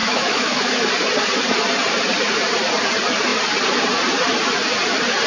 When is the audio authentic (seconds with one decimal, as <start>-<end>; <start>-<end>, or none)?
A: 0.9-5.3